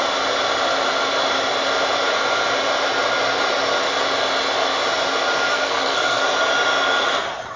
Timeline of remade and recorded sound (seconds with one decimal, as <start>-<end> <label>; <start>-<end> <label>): 0.0-5.5 recorded; 5.5-6.2 remade; 6.2-7.6 recorded